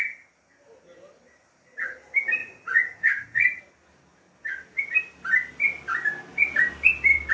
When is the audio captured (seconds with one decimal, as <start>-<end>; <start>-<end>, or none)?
0.0-2.4; 3.6-7.3